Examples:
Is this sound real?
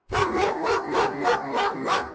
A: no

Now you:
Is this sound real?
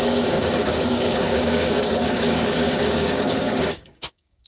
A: no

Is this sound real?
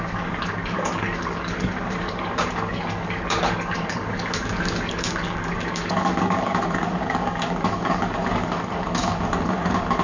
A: no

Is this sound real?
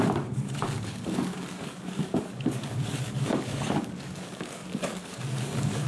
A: no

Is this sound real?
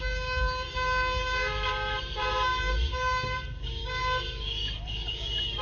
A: no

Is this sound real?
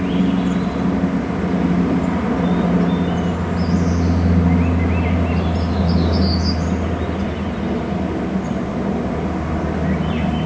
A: yes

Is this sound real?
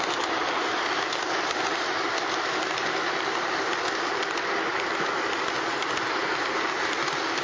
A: yes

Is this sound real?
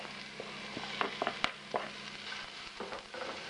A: yes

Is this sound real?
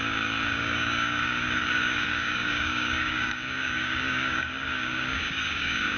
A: no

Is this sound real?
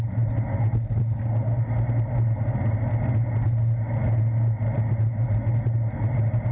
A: yes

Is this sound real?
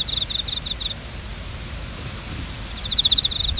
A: yes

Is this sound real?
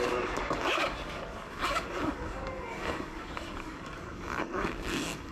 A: no